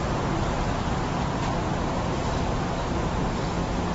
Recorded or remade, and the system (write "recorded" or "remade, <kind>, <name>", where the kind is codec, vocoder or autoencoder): recorded